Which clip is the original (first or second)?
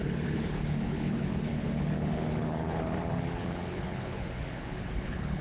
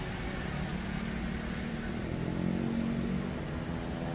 second